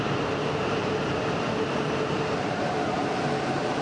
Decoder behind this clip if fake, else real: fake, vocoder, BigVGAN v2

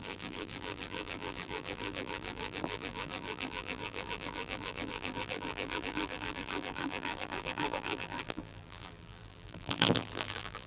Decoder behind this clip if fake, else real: fake, vocoder, BigVGAN v2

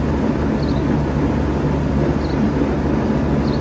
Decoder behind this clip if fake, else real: real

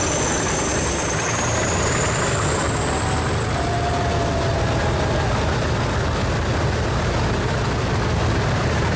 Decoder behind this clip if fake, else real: real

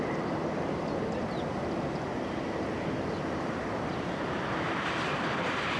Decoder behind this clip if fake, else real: fake, vocoder, BigVGAN v2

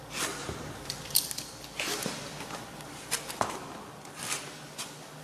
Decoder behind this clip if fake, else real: real